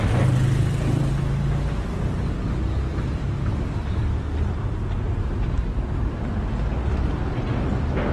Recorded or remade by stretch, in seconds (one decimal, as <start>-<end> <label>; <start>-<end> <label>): 0.0-8.1 recorded